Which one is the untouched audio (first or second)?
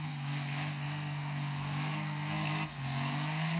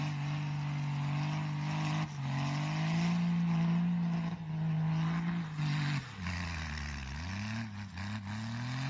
second